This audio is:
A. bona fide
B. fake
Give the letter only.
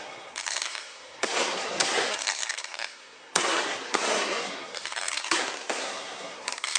B